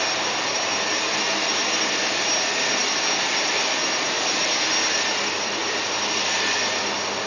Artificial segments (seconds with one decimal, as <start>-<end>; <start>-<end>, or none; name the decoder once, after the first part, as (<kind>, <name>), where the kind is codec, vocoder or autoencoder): 5.6-6.8 (vocoder, BigVGAN v2)